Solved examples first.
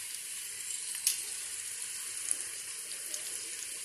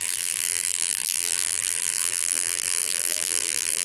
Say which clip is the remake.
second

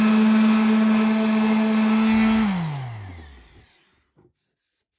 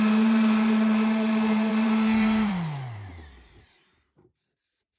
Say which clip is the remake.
second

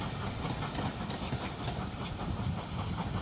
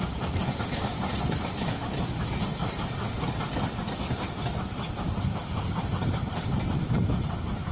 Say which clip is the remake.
second